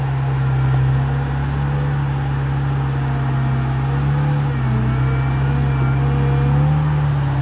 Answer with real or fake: real